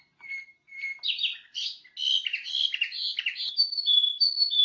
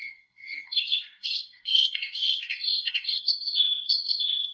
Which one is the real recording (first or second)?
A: first